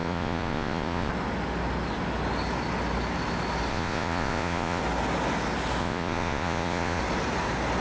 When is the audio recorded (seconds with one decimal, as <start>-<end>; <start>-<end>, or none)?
1.1-3.7; 4.8-5.8; 7.0-7.8

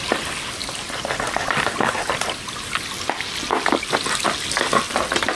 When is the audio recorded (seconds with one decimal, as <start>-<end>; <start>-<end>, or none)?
0.0-5.4